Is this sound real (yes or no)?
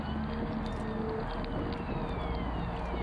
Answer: yes